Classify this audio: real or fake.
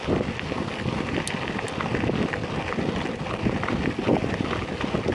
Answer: real